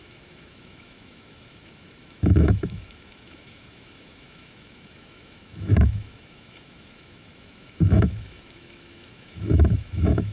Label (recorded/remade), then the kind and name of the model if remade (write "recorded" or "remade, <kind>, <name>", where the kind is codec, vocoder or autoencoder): remade, autoencoder, DAC-VAE